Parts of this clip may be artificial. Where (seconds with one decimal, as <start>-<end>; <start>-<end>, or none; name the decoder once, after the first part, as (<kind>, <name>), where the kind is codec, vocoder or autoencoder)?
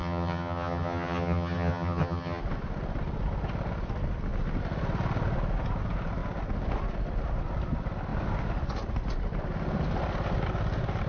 0.0-2.4 (vocoder, HiFi-GAN)